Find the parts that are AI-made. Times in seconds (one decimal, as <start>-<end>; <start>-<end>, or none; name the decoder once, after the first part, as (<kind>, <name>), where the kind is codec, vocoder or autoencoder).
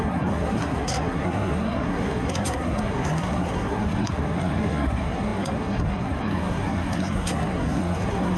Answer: 0.0-8.4 (codec, SNAC)